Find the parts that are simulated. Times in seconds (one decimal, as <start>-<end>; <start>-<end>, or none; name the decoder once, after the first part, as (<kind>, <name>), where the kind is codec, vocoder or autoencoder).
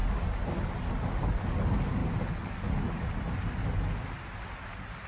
none